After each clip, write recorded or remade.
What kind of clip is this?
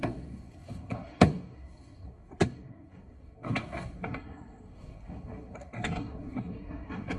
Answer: remade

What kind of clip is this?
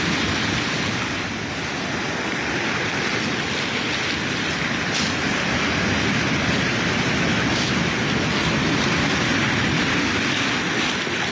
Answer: recorded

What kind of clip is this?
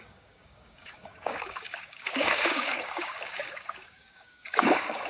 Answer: remade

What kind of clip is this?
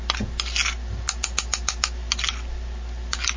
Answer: recorded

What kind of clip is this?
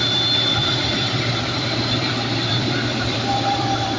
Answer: remade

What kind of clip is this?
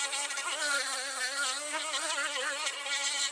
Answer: recorded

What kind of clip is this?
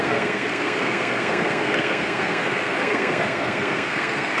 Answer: remade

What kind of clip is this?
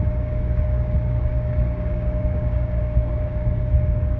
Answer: remade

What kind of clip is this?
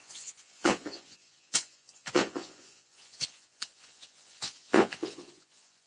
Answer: remade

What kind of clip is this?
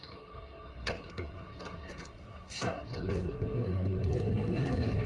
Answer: remade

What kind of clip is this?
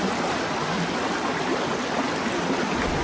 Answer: recorded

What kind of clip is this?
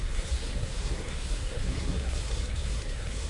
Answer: remade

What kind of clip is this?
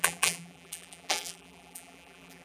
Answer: remade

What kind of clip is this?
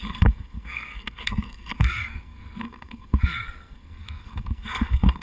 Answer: remade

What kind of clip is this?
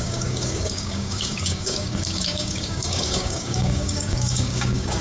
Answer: remade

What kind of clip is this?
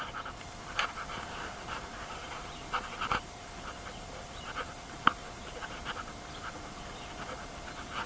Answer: recorded